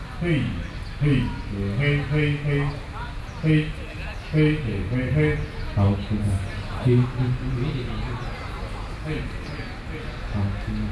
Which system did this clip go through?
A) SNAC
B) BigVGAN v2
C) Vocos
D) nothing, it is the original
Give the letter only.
D